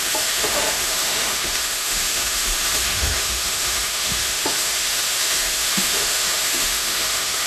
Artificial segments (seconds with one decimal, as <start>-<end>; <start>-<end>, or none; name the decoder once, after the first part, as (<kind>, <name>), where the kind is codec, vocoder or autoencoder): 0.0-7.5 (autoencoder, DAC-VAE)